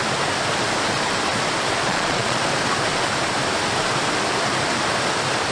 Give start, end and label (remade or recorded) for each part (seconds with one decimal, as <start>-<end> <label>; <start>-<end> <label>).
0.0-1.9 recorded; 1.9-2.4 remade; 2.4-5.5 recorded